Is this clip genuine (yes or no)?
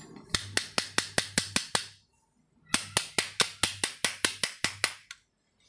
yes